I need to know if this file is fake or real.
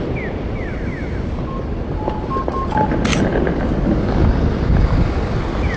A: real